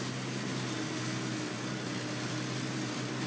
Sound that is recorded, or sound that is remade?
recorded